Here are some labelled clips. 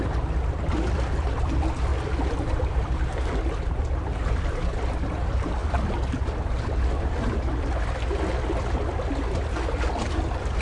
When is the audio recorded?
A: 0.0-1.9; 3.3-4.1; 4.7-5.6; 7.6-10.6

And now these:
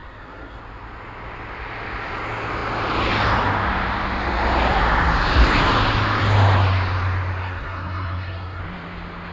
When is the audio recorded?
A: 0.6-7.4; 8.6-9.3

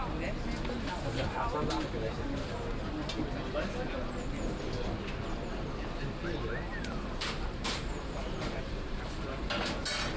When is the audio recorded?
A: 0.0-6.7; 8.9-10.2